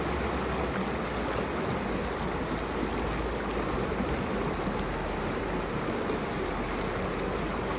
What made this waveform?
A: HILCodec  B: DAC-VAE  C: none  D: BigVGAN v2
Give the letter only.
C